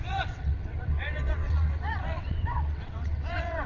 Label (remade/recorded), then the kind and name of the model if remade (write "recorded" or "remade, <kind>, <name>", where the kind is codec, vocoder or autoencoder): remade, vocoder, WaveNeXt